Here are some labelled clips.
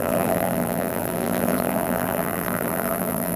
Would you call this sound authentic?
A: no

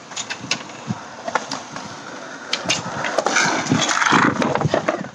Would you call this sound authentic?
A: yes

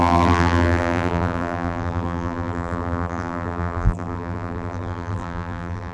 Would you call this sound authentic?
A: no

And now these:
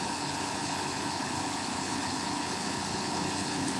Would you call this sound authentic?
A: no